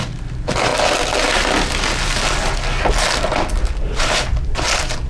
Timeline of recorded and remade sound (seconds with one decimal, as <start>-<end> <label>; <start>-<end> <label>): 0.0-0.7 remade; 0.7-3.8 recorded; 3.8-5.1 remade